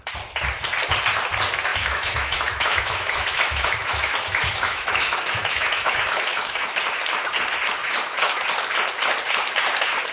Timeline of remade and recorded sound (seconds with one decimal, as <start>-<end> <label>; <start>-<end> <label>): 0.0-1.7 recorded; 1.7-6.8 remade; 6.8-7.8 recorded; 7.8-8.4 remade; 8.4-10.1 recorded